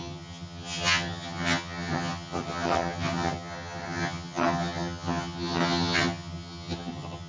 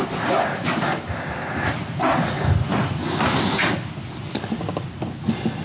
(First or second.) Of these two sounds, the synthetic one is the first